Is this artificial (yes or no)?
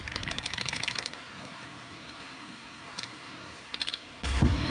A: yes